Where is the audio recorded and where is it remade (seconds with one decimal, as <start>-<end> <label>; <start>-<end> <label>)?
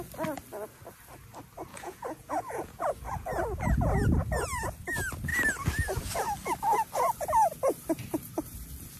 0.0-1.7 recorded; 1.7-2.8 remade; 2.8-9.0 recorded